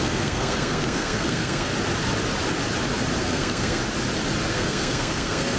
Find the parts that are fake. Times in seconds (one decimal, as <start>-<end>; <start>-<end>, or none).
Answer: 0.0-1.7; 3.2-3.8; 4.5-5.6